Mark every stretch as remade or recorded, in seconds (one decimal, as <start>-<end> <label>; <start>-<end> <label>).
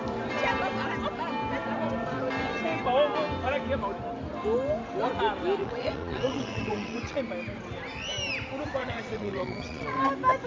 0.0-5.6 recorded; 5.6-7.2 remade; 7.2-8.8 recorded; 8.8-10.0 remade; 10.0-10.5 recorded